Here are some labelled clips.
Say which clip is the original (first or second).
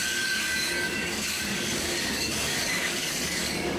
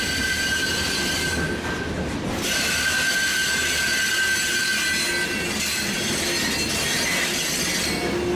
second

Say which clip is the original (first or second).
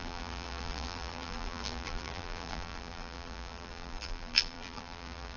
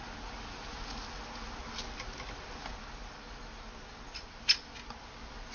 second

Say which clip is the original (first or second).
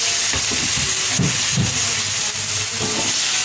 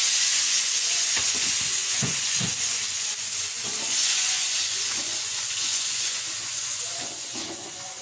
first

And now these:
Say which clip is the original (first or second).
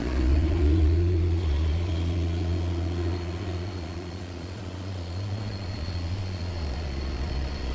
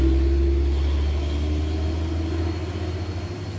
second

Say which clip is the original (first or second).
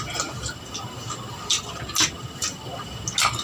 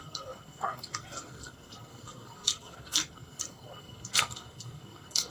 first